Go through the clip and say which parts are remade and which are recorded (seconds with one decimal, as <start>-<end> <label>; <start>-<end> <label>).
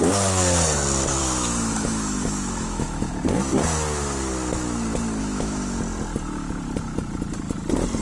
0.0-1.2 recorded; 1.2-3.1 remade; 3.1-5.2 recorded; 5.2-5.8 remade; 5.8-8.0 recorded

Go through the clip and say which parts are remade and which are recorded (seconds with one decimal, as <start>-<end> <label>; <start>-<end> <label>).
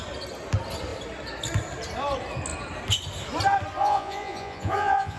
0.0-3.8 recorded; 3.8-5.2 remade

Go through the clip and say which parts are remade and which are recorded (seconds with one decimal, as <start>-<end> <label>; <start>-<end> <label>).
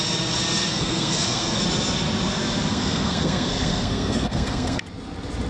0.0-0.7 recorded; 0.7-1.6 remade; 1.6-2.7 recorded; 2.7-4.8 remade; 4.8-5.5 recorded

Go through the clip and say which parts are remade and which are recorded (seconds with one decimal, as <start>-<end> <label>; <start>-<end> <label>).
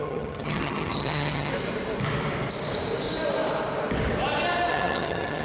0.0-1.5 remade; 1.5-4.7 recorded; 4.7-5.4 remade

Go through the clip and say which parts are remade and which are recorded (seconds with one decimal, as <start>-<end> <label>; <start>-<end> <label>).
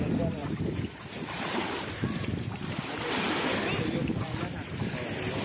0.0-0.4 recorded; 0.4-3.1 remade; 3.1-5.4 recorded